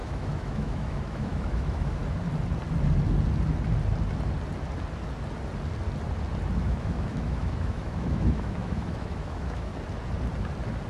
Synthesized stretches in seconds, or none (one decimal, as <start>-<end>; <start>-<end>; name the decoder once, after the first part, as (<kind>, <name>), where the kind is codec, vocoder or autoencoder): 0.0-2.0 (autoencoder, DAC-VAE); 6.6-9.7